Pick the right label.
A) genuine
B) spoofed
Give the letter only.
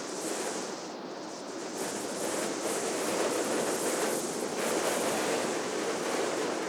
A